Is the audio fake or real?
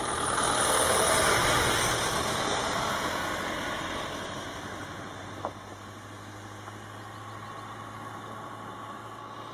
real